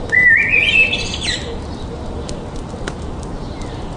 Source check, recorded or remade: remade